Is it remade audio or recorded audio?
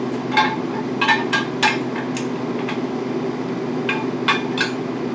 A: recorded